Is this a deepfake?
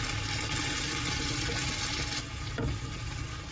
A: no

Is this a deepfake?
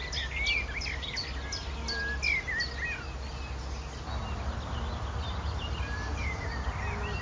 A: no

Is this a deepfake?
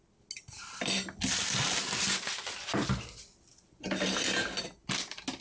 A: no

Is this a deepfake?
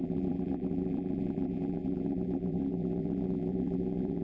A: yes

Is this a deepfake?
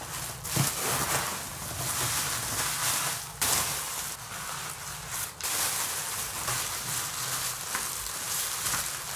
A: no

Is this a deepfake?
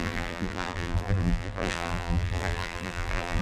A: yes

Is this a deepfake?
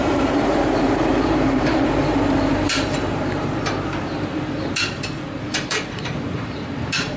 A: yes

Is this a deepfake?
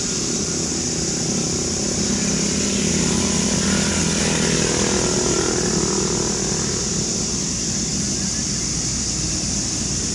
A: no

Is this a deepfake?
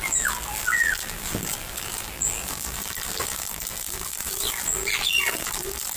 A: yes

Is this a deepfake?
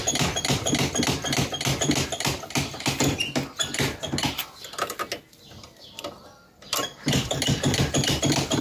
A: no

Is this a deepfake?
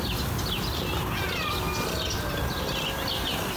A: no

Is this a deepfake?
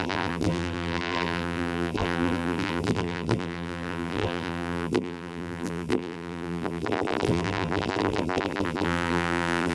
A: yes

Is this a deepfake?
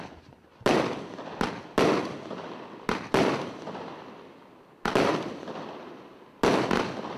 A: no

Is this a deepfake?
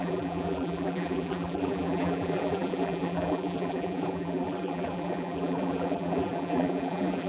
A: yes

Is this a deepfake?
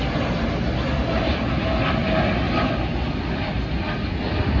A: no